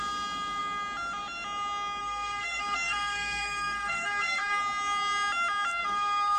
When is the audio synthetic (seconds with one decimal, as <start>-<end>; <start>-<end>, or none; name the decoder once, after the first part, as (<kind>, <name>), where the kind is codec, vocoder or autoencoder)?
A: 2.0-4.6 (codec, SNAC); 5.8-6.4